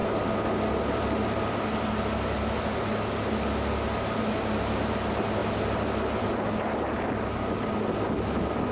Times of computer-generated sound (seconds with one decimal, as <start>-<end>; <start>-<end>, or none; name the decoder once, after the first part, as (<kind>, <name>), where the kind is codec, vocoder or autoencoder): none